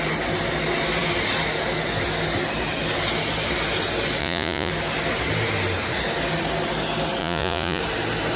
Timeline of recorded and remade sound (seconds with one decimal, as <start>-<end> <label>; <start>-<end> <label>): 0.0-4.2 recorded; 4.2-4.7 remade; 4.7-7.2 recorded; 7.2-7.8 remade; 7.8-8.4 recorded